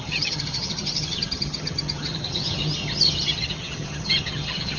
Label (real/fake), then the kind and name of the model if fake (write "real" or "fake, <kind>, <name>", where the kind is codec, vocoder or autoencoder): fake, vocoder, HiFi-GAN